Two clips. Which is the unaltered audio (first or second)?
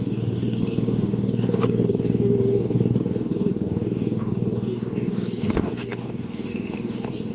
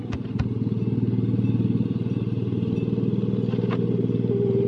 second